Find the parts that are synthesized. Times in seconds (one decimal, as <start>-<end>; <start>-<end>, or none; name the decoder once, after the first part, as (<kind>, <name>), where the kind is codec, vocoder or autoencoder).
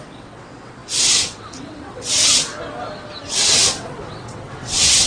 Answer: 0.0-2.5 (vocoder, WaveNeXt); 3.3-5.1